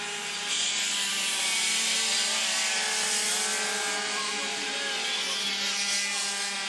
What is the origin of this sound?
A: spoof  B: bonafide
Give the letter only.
B